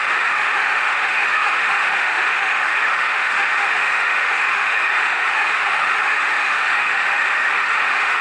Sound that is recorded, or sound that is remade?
remade